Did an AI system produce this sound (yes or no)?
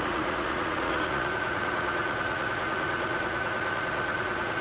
yes